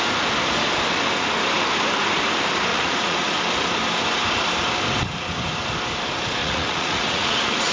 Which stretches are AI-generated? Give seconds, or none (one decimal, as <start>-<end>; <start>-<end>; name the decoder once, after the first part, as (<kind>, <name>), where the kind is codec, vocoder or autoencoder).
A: 2.7-3.3 (vocoder, Vocos); 6.4-7.7